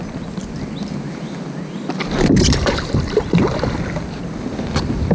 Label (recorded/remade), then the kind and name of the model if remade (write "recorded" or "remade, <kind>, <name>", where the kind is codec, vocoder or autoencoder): recorded